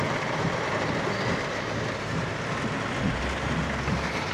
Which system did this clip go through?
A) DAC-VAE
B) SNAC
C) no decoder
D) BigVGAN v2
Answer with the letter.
C